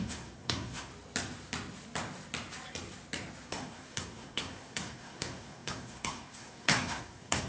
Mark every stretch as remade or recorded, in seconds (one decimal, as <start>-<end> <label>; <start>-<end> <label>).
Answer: 0.0-0.9 remade; 0.9-3.5 recorded; 3.5-7.5 remade